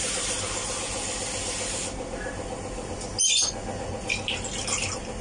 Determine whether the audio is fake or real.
real